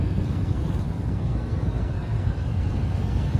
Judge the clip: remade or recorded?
remade